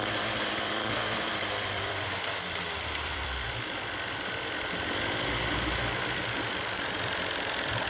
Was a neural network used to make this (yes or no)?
yes